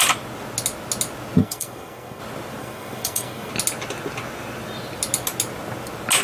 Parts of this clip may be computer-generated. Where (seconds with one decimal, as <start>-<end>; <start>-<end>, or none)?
1.4-2.2; 2.6-3.5